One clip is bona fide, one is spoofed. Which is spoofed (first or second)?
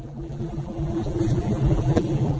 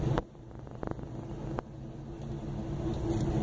first